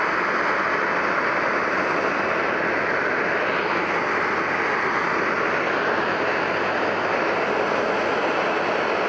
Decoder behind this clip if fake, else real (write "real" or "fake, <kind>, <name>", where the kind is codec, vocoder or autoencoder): real